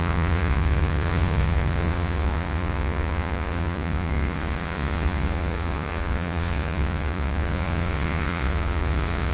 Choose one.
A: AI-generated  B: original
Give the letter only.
A